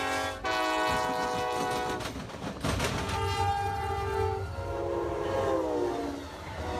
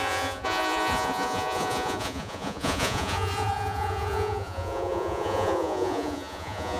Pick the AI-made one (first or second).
second